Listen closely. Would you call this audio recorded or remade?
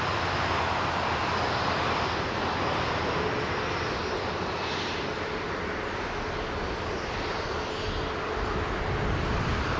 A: recorded